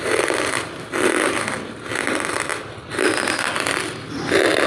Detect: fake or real real